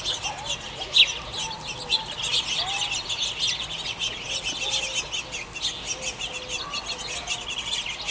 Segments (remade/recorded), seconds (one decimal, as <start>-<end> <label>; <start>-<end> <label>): 0.0-8.1 recorded